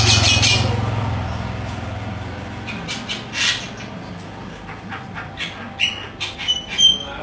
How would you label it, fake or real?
real